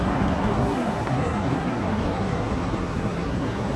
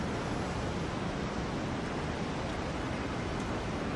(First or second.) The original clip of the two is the second